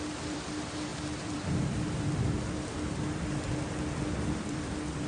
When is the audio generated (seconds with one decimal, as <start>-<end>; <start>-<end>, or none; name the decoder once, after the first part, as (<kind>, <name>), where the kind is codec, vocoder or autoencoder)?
0.0-5.1 (vocoder, BigVGAN v2)